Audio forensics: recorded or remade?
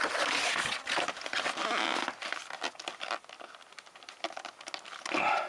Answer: recorded